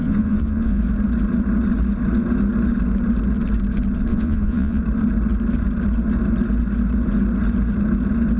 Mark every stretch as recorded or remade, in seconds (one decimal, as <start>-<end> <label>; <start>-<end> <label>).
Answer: 0.0-0.8 remade; 0.8-4.1 recorded; 4.1-4.8 remade; 4.8-8.4 recorded